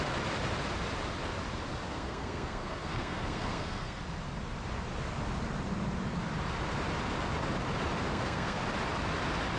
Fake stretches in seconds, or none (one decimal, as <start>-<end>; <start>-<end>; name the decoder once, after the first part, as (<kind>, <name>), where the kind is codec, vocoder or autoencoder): 1.9-4.0 (codec, SNAC); 8.1-8.6